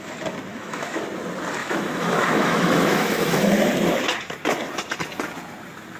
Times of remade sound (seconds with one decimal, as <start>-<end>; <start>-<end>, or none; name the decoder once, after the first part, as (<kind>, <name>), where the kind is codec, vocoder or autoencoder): 0.5-1.0 (autoencoder, DAC-VAE); 1.6-3.5